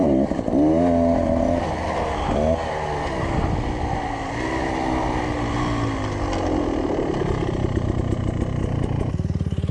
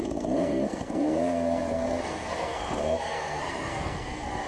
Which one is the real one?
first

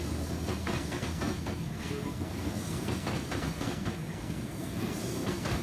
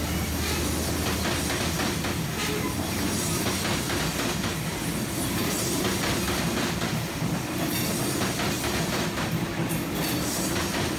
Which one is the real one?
second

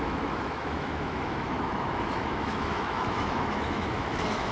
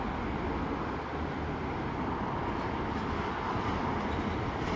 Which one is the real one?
second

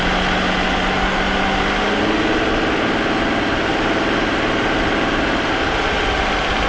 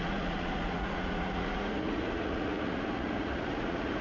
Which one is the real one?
first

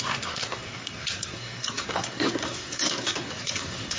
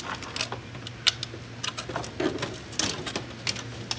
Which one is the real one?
second